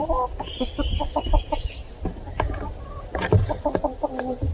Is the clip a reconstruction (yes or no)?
no